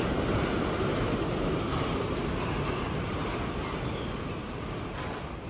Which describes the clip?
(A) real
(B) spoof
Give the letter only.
A